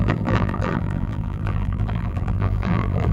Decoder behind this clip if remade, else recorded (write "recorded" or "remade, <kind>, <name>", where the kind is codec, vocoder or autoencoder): remade, vocoder, BigVGAN v2